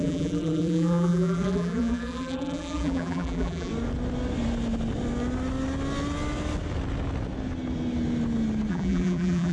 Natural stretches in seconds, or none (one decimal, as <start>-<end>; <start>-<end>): 3.7-8.7